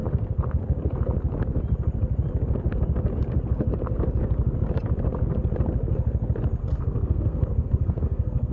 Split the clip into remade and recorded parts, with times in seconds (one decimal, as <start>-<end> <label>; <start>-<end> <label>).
0.0-6.6 recorded; 6.6-8.5 remade